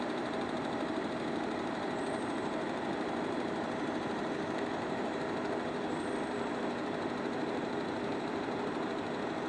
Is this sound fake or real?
fake